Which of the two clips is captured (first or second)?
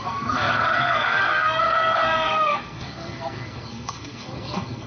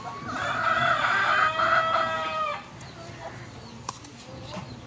second